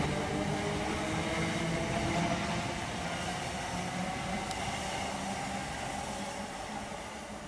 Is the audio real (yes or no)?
yes